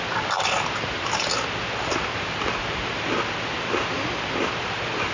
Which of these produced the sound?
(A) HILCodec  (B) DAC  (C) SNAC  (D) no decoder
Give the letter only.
D